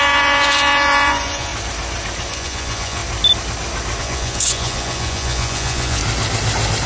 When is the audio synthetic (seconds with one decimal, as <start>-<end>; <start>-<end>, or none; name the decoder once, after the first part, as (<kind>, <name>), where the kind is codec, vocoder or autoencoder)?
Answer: 0.0-1.5 (vocoder, Vocos); 2.3-3.0; 4.0-6.0